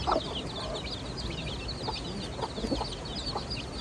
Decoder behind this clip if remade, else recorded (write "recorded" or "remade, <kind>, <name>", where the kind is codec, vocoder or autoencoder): recorded